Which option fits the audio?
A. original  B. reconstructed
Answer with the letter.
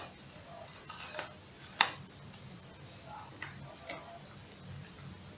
A